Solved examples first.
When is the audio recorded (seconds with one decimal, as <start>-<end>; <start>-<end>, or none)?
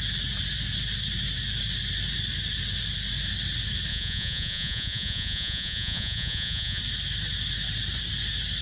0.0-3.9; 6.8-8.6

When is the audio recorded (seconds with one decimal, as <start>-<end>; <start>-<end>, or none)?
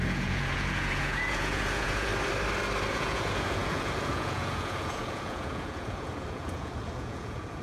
2.1-2.9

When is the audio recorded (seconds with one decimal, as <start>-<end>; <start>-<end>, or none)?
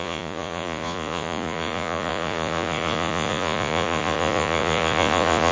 none